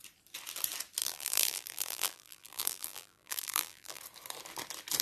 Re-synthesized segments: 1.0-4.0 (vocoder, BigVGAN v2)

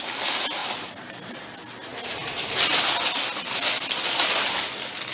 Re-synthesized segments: none

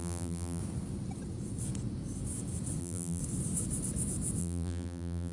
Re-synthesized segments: 0.0-0.6 (vocoder, BigVGAN v2); 2.8-3.2; 4.4-5.3

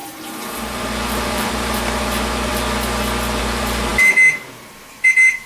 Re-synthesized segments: 0.0-2.5 (vocoder, BigVGAN v2); 3.4-5.5